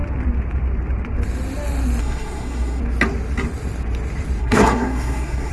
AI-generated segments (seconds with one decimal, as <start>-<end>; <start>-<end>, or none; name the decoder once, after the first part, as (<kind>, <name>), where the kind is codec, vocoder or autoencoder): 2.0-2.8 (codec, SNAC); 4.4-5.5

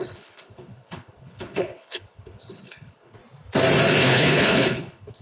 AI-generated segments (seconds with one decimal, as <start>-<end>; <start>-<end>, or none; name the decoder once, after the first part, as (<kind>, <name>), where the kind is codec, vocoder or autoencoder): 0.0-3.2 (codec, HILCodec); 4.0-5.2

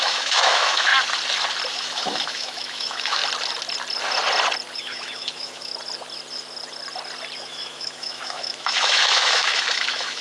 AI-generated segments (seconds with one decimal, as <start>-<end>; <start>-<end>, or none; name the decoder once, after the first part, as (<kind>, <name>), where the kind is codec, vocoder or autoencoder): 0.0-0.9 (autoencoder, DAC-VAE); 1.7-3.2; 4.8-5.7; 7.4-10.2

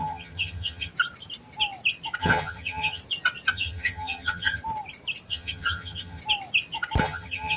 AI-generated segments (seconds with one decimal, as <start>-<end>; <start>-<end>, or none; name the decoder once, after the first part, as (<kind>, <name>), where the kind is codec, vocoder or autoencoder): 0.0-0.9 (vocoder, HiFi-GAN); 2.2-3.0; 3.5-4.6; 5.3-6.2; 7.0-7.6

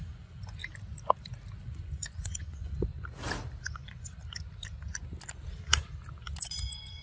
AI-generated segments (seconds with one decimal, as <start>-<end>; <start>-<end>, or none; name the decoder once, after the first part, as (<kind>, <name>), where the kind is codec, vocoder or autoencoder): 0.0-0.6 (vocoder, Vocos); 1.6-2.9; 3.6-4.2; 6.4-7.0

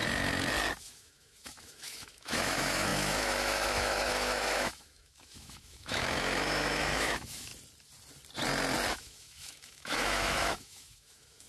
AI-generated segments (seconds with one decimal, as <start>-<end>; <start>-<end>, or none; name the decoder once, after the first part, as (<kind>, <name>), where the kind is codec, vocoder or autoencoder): 0.8-7.5 (autoencoder, DAC-VAE); 8.9-11.5

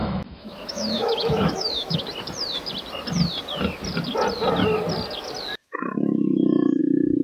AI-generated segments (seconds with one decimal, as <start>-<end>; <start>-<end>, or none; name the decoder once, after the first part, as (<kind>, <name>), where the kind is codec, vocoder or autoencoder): 0.0-2.0 (autoencoder, DAC-VAE); 5.6-6.8